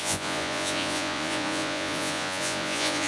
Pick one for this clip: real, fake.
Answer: fake